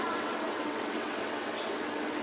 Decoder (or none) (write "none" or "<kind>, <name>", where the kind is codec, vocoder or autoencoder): vocoder, WaveNeXt